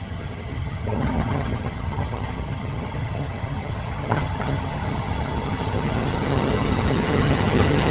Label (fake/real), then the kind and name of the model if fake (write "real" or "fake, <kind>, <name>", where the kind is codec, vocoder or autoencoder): fake, vocoder, HiFi-GAN